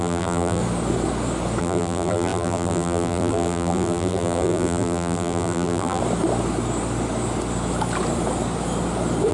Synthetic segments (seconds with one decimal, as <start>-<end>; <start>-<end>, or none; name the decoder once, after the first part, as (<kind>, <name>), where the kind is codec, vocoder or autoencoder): 0.0-0.6 (vocoder, BigVGAN v2); 1.6-6.0